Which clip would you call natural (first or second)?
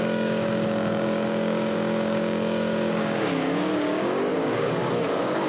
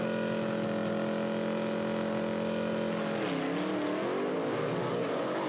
second